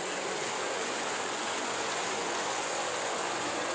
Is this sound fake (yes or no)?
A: yes